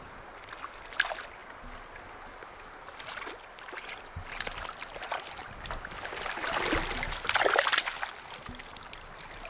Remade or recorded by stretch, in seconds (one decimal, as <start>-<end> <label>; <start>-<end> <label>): 0.0-9.5 recorded